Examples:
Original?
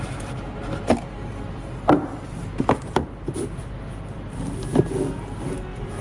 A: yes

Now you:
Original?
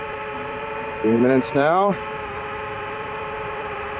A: no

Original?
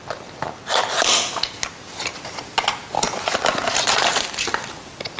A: yes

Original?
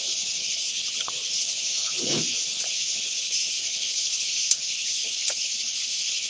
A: no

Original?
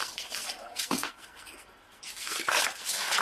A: no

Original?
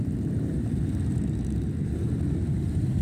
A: no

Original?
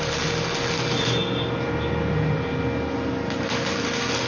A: yes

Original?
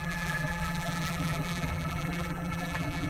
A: no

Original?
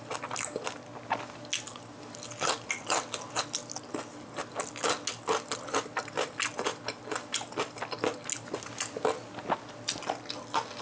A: yes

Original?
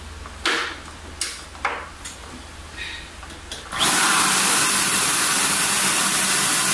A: yes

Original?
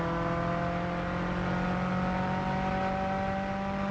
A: yes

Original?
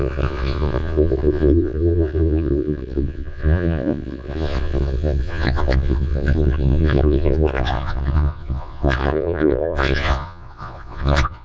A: no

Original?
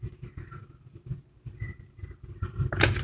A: yes